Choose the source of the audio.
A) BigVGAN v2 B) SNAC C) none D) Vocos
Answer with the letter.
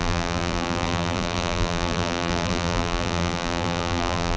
A